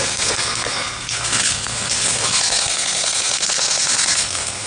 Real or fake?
fake